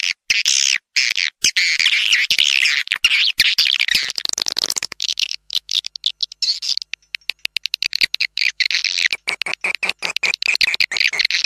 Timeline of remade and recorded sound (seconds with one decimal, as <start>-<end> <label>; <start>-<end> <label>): 0.0-4.8 recorded; 4.8-5.8 remade; 5.8-8.2 recorded; 8.2-8.7 remade; 8.7-11.5 recorded